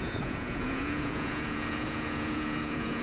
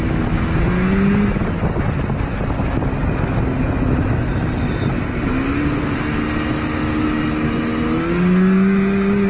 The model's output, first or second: first